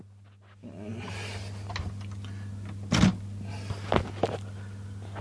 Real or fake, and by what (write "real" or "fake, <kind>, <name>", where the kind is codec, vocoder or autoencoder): real